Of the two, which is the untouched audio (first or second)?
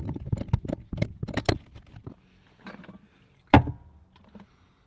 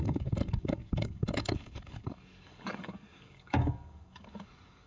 first